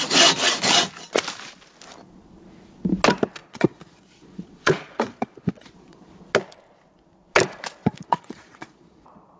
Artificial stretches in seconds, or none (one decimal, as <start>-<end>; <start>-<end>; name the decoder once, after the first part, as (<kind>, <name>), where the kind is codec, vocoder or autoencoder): 3.4-6.1 (vocoder, Vocos); 7.8-9.4